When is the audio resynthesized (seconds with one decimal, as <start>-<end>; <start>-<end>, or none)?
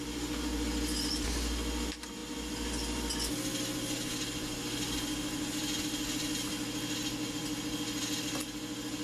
none